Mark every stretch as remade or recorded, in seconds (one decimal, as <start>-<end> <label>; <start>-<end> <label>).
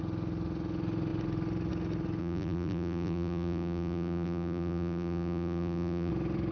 0.0-2.2 recorded; 2.2-6.1 remade; 6.1-6.5 recorded